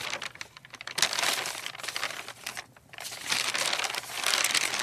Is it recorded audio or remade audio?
recorded